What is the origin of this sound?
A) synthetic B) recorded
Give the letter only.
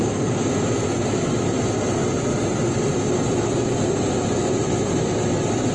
A